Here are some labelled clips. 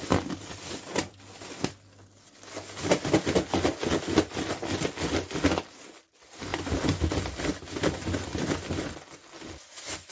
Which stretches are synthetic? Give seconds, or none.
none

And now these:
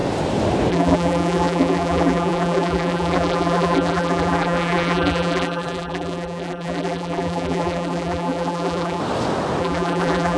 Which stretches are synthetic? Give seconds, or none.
0.7-9.0; 9.6-10.4